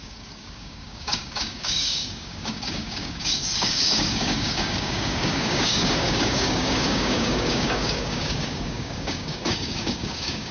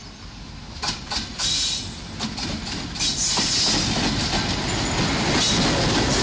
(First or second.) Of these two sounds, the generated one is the first